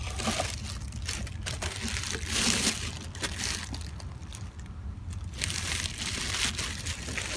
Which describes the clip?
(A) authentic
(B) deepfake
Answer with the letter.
A